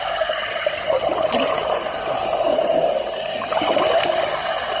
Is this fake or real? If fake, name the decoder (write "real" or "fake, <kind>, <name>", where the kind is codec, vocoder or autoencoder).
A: real